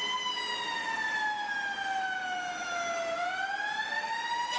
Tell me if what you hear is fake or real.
real